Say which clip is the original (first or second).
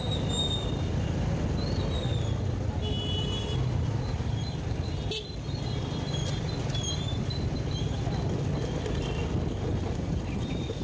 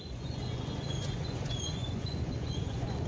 first